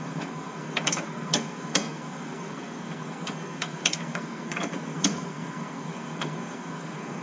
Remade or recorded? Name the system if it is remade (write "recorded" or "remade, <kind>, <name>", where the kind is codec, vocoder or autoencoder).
remade, codec, SNAC